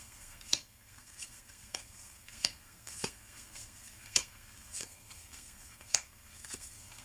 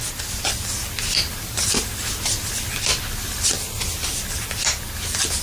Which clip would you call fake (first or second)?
first